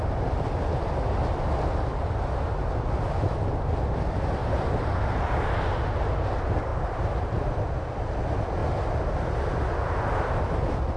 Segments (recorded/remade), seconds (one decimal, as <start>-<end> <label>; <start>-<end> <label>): 0.0-4.4 recorded; 4.4-6.1 remade; 6.1-6.7 recorded; 6.7-7.5 remade; 7.5-11.0 recorded